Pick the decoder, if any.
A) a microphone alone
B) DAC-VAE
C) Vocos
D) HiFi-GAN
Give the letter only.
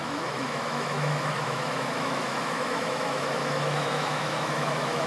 B